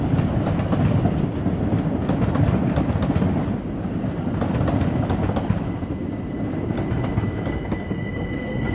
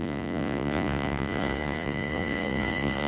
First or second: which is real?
first